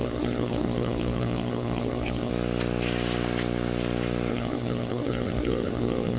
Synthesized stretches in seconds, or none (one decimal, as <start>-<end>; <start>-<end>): 0.0-2.3; 4.3-6.2